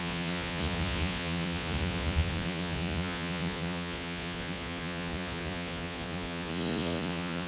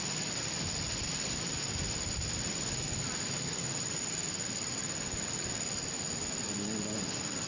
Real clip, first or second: second